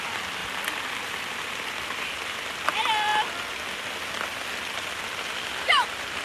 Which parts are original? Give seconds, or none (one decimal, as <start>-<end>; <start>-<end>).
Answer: 0.4-1.0